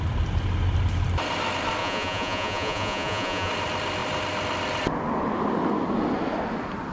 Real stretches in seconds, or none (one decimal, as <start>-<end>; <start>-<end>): 0.0-1.8; 3.5-6.9